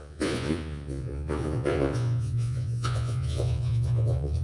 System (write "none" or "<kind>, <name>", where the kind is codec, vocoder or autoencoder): vocoder, Vocos